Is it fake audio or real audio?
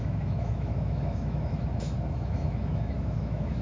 fake